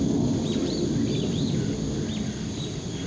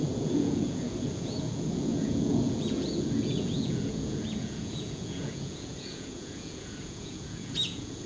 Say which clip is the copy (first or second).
second